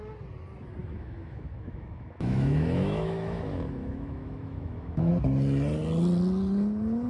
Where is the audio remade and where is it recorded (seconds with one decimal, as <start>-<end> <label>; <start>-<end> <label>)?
0.0-0.8 recorded; 0.8-5.1 remade; 5.1-7.1 recorded